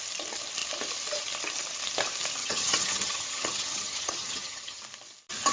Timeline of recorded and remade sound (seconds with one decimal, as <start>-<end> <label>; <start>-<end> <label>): 0.0-2.4 recorded; 2.4-4.8 remade; 4.8-5.5 recorded